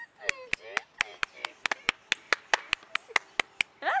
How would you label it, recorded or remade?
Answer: recorded